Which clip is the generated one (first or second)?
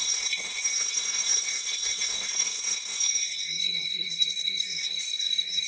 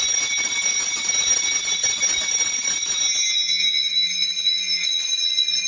first